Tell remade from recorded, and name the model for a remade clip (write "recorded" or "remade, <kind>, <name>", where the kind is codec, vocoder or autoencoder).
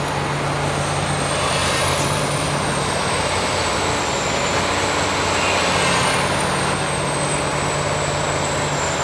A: recorded